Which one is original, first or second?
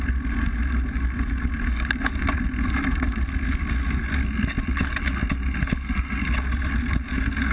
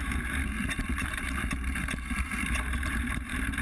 first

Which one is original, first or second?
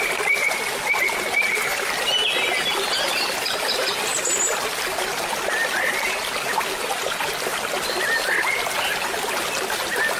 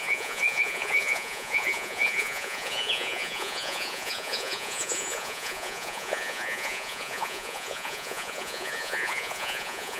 first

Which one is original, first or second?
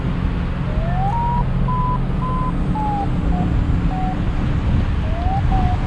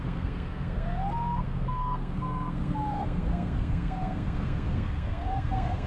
first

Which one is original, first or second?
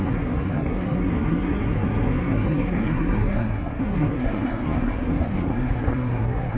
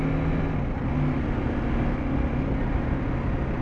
second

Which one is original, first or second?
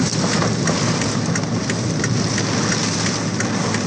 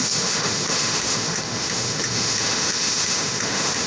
first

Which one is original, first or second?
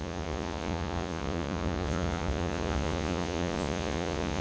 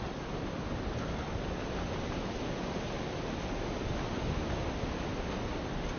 second